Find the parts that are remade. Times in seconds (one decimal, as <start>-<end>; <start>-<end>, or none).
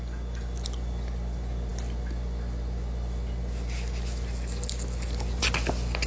none